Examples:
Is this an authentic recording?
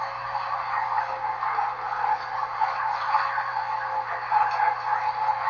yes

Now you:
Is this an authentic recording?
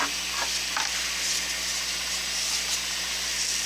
yes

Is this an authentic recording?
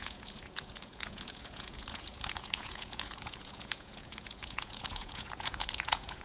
no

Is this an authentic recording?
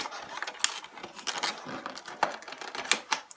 yes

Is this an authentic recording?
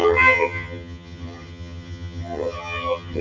no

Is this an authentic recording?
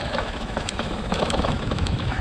no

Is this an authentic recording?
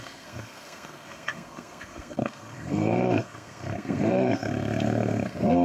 no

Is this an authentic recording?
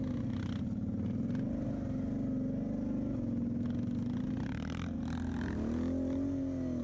yes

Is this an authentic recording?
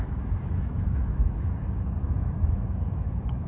no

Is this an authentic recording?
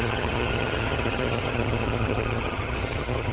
no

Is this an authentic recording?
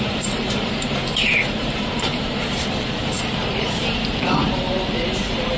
no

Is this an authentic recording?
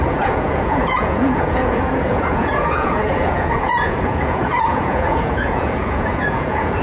no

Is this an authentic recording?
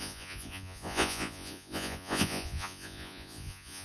no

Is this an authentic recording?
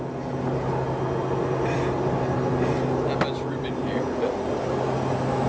yes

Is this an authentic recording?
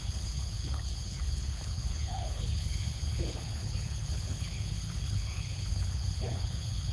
no